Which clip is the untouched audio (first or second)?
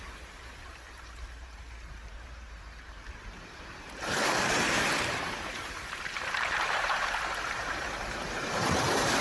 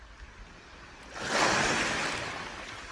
second